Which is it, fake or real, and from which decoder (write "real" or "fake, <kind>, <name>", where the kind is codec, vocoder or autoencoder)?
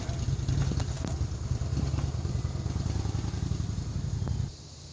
real